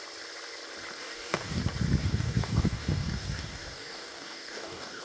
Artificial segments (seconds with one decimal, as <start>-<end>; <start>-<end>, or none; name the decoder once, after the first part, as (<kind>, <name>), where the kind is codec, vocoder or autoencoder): 1.0-1.6 (codec, DAC); 2.0-5.0